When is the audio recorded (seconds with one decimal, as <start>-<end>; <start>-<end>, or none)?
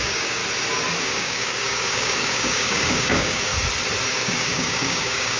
0.4-1.0; 3.5-4.1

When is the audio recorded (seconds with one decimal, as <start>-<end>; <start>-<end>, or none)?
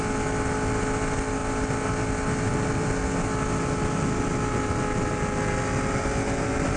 0.0-6.8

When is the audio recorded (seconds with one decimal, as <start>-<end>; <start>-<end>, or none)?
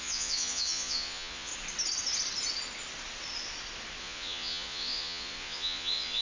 1.5-4.0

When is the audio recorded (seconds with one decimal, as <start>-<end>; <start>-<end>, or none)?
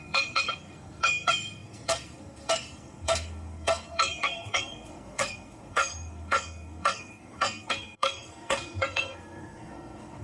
none